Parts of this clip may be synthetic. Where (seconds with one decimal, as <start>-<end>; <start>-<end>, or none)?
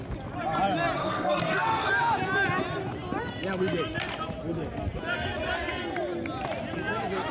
1.0-1.9